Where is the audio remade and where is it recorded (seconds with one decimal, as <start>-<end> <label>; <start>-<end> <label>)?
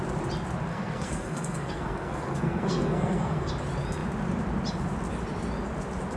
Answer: 0.0-0.7 recorded; 0.7-3.5 remade; 3.5-6.2 recorded